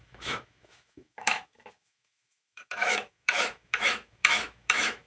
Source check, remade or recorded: remade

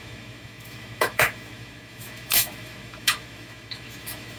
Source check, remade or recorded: remade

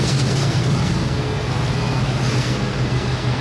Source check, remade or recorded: remade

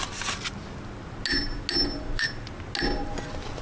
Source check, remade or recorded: recorded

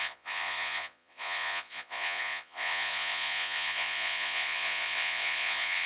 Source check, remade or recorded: remade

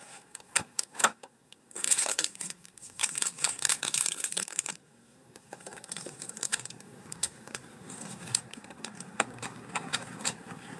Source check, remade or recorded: remade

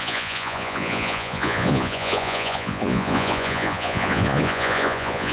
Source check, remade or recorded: remade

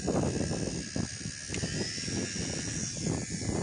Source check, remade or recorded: recorded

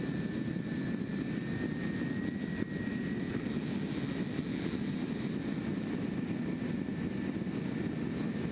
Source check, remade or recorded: recorded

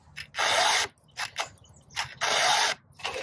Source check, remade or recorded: recorded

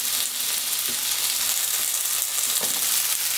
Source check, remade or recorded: recorded